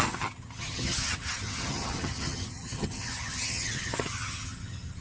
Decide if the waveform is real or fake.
fake